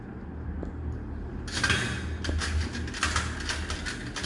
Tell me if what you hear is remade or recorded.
recorded